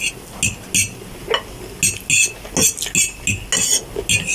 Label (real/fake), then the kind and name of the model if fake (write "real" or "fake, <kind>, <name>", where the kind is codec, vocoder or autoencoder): real